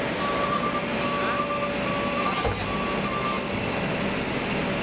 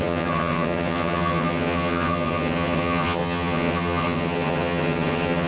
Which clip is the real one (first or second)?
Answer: first